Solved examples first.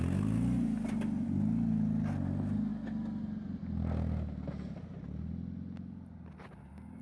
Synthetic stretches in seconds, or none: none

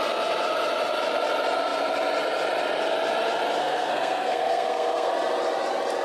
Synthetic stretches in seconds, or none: 3.6-5.1 (codec, SNAC)